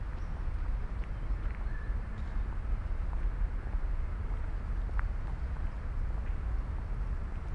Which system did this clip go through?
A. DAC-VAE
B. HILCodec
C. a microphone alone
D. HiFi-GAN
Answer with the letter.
C